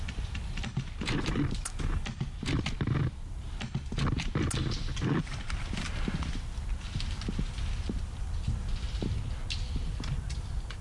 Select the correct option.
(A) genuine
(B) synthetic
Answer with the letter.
A